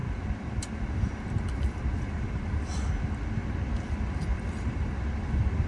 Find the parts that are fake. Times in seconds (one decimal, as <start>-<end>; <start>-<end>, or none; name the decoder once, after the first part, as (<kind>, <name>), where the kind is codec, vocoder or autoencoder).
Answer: 0.0-3.2 (vocoder, BigVGAN v2); 4.3-5.0